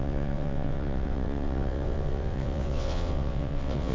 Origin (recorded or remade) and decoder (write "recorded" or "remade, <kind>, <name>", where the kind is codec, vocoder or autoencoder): remade, vocoder, WaveNeXt